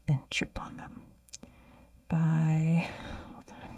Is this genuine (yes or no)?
no